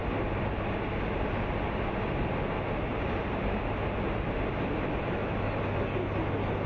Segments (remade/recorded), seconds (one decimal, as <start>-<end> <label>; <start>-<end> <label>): 0.0-6.7 recorded